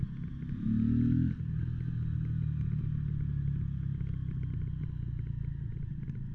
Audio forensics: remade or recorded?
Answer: recorded